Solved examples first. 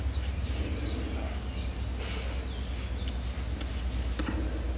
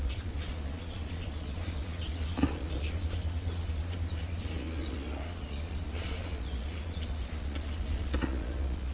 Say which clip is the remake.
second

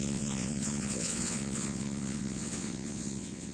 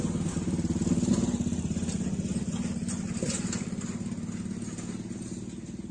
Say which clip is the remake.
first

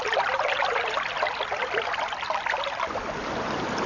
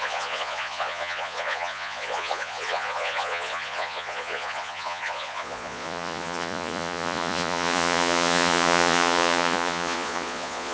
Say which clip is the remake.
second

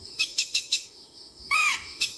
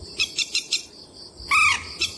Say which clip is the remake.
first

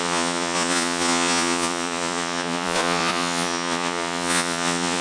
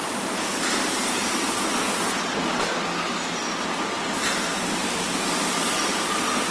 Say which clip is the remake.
first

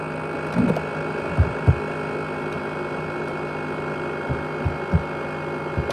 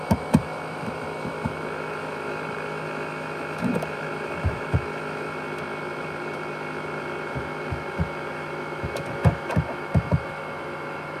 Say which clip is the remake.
second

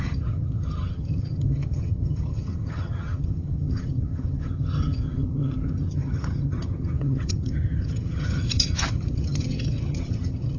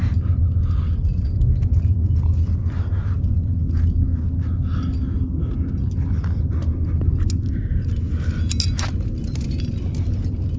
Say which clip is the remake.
first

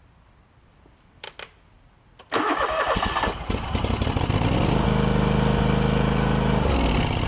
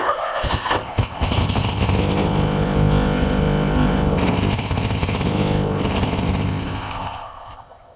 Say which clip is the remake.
second